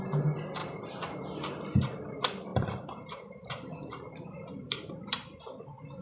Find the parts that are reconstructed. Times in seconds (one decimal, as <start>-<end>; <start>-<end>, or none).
0.6-1.5; 2.5-5.6